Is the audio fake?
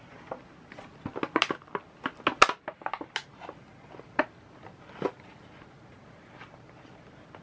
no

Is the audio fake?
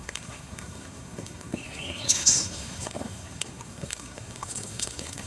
yes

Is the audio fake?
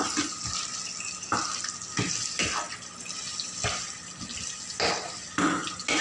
no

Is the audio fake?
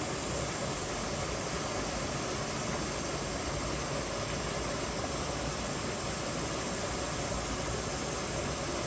no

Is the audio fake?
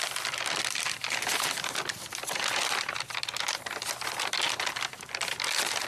no